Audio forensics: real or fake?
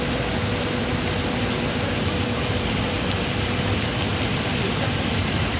real